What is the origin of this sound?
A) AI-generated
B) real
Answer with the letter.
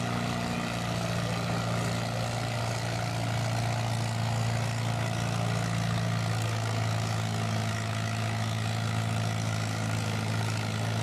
B